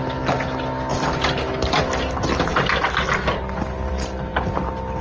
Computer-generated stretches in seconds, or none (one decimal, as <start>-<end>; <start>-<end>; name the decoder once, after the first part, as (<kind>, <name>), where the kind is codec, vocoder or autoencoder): none